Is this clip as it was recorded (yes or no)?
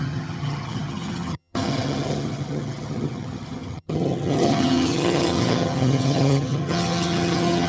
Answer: no